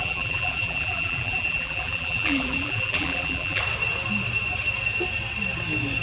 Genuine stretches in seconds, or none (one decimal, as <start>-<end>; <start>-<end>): 3.6-6.0